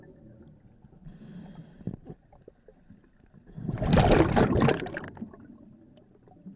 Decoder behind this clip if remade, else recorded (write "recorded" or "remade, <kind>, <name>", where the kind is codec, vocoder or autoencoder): recorded